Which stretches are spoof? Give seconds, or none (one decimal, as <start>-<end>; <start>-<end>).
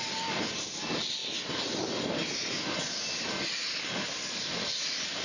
none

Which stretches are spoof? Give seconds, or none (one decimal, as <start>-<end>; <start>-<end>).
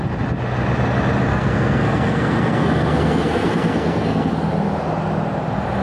1.3-4.3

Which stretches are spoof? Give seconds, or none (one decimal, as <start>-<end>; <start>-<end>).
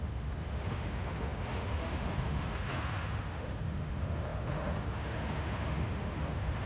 0.0-6.7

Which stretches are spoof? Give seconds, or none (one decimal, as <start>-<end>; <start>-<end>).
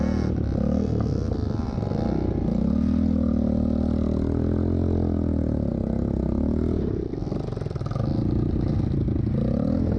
none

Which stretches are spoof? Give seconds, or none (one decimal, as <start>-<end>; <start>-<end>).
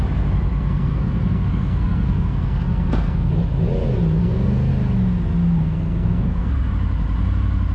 0.5-3.3; 4.2-4.7; 5.6-6.5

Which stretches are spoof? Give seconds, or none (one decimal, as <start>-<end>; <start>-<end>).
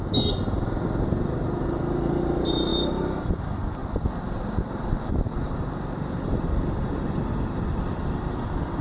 none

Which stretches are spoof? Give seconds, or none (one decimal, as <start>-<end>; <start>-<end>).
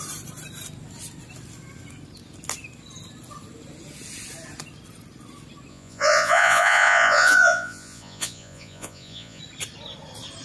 5.7-9.4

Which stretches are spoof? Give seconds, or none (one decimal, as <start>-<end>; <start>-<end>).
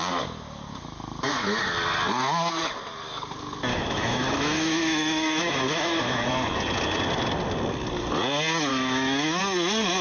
3.7-6.3; 8.7-9.4